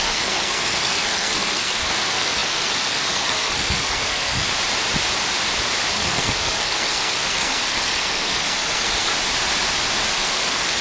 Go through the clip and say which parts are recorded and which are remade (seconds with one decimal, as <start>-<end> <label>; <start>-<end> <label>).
0.0-4.5 remade; 4.5-5.9 recorded; 5.9-9.1 remade; 9.1-10.1 recorded; 10.1-10.8 remade